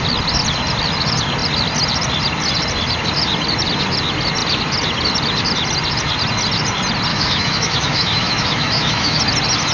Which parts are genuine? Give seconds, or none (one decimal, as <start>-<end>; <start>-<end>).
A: 0.0-7.1; 9.2-9.7